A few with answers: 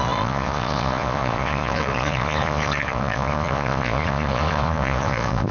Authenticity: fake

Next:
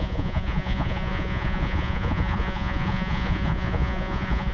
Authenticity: fake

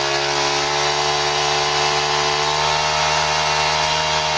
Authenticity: real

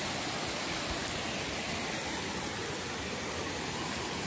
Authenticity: real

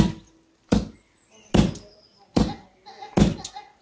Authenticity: real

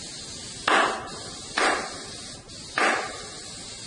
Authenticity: real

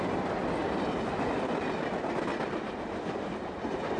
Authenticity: real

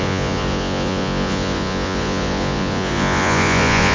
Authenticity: fake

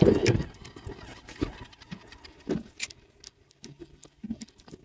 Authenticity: real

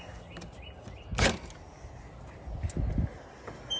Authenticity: real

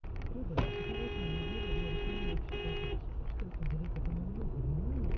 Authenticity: real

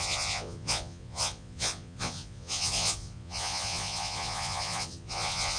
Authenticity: fake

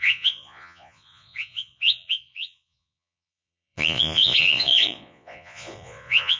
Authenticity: fake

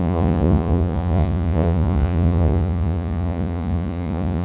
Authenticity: fake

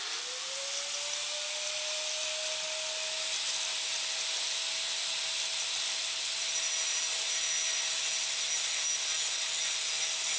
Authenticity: real